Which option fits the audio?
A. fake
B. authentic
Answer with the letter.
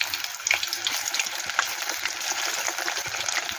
B